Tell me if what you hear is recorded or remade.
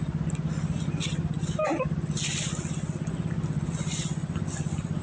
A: recorded